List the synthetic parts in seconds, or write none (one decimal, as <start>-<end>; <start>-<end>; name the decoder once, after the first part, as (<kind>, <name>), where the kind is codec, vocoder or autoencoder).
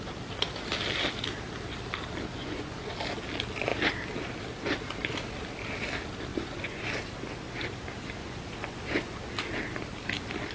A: 2.3-2.9 (vocoder, Vocos); 6.3-6.8; 8.2-9.3